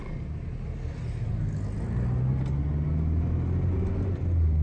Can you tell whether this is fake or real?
real